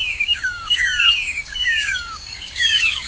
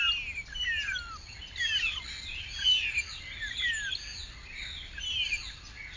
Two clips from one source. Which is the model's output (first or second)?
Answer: first